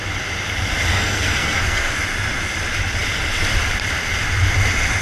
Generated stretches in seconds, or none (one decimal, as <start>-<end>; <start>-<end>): 0.9-1.9